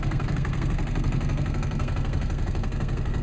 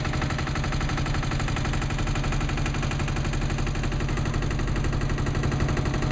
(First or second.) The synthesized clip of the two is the first